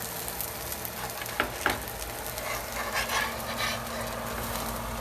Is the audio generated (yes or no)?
no